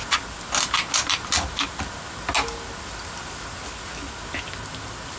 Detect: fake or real real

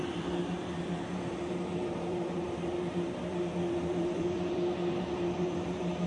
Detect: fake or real fake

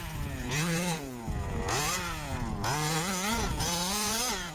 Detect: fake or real fake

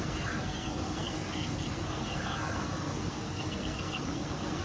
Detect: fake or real fake